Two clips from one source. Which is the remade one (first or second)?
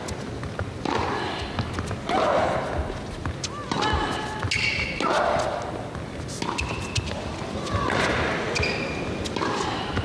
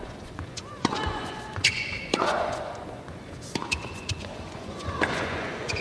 second